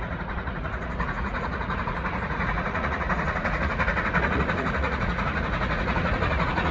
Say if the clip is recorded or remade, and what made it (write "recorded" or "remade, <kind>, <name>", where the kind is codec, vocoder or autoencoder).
remade, vocoder, Vocos